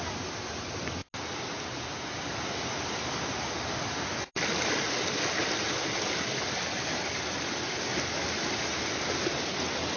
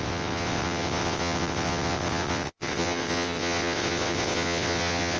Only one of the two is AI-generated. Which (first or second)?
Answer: second